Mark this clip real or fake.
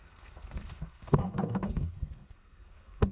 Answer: fake